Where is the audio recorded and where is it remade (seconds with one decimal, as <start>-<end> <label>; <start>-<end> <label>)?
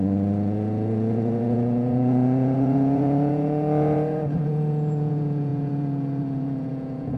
0.0-7.2 remade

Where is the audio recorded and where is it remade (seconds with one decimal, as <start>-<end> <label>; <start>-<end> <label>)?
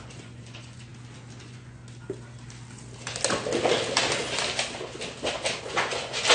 0.0-0.9 remade; 0.9-1.4 recorded; 1.4-1.8 remade; 1.8-5.6 recorded; 5.6-6.3 remade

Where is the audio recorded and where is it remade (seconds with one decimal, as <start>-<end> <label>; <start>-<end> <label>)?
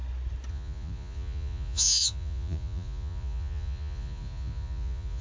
0.0-0.5 recorded; 0.5-5.2 remade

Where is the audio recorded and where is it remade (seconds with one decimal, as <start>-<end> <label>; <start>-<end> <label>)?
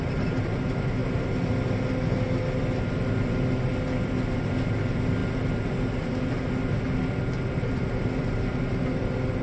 0.0-9.4 recorded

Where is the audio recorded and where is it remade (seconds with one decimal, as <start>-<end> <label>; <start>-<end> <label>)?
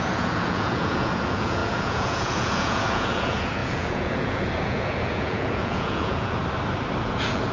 0.0-6.4 remade; 6.4-7.0 recorded; 7.0-7.5 remade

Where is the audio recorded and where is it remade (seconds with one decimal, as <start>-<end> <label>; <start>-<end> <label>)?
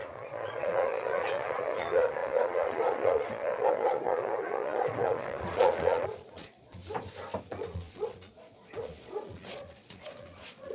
0.0-6.8 remade; 6.8-7.5 recorded; 7.5-10.7 remade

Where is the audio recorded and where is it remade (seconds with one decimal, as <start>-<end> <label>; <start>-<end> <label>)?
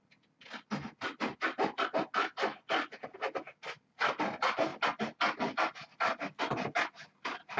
0.0-7.6 recorded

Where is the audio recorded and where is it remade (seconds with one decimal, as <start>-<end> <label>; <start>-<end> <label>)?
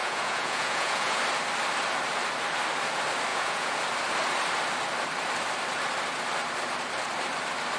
0.0-1.2 remade; 1.2-3.3 recorded; 3.3-3.8 remade; 3.8-7.8 recorded